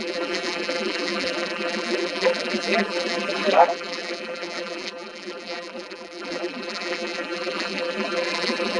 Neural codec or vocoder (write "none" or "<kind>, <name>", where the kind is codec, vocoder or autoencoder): vocoder, BigVGAN v2